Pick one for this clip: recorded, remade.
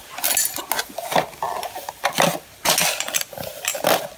recorded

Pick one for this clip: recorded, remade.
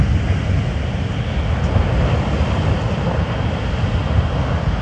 recorded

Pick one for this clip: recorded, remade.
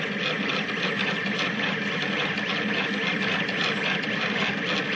recorded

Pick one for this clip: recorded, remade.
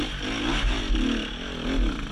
recorded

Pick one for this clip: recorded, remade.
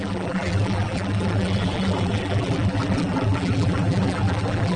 remade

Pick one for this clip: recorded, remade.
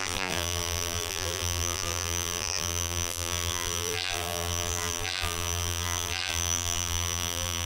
remade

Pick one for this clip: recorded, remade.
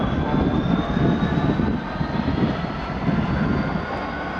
recorded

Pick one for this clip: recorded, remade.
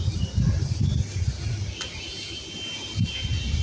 recorded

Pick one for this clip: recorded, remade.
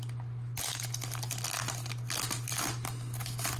recorded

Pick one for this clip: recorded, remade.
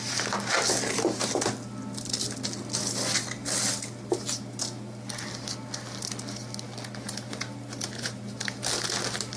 recorded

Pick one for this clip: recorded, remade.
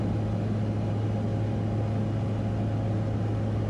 recorded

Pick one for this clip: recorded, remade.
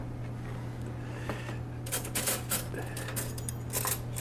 recorded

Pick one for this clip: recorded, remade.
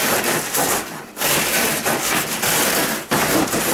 remade